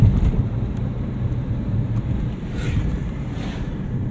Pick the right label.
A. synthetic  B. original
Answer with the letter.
A